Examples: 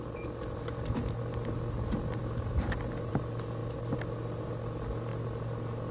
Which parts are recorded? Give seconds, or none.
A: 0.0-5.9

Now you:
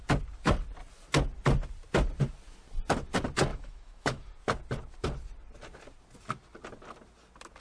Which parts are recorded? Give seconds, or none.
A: 0.0-3.5; 4.3-7.6

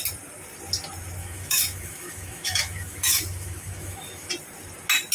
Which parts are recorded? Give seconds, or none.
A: 0.0-1.2; 4.3-5.1

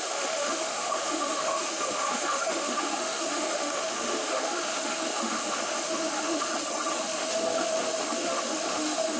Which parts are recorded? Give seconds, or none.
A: 6.5-7.0

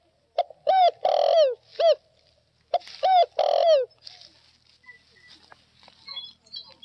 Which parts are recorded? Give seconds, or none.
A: 0.0-6.8

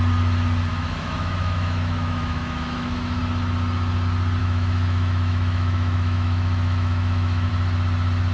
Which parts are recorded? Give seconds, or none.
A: 0.0-0.7; 3.2-4.4; 7.5-8.3